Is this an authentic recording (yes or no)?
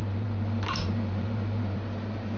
no